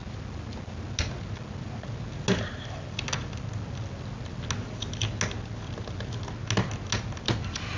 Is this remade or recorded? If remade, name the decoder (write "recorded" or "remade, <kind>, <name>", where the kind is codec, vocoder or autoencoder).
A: recorded